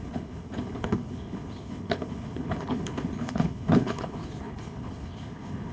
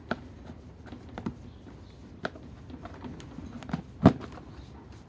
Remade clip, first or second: first